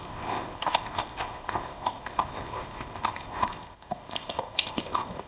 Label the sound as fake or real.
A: fake